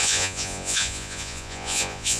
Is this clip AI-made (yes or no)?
yes